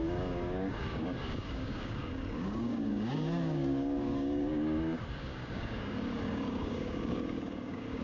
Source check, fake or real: fake